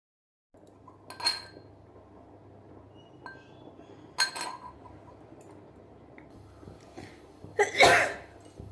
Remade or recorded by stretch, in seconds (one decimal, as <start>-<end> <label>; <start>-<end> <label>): 0.0-8.7 recorded